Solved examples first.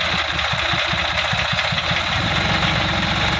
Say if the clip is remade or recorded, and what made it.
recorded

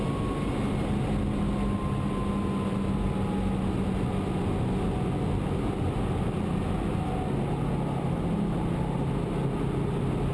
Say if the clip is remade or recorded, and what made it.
recorded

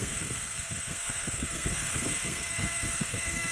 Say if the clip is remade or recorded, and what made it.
remade, codec, SNAC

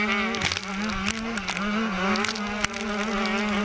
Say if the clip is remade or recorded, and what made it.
recorded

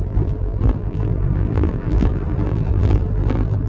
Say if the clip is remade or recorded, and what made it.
remade, vocoder, BigVGAN v2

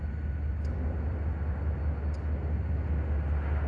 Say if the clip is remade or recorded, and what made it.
recorded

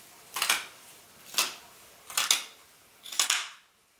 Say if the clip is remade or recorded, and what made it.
recorded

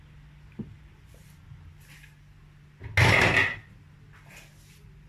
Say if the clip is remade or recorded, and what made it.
recorded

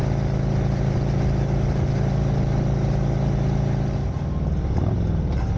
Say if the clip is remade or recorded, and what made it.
recorded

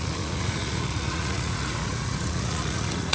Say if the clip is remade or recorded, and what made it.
remade, vocoder, Vocos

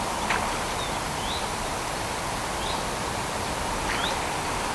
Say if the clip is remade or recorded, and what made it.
recorded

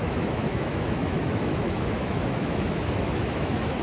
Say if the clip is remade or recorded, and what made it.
remade, autoencoder, DAC-VAE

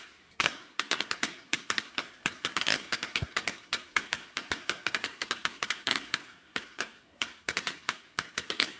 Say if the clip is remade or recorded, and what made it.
remade, codec, SNAC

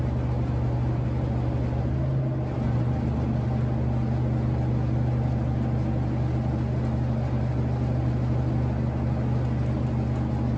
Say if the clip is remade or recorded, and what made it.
recorded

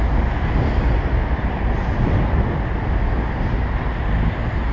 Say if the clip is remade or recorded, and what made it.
recorded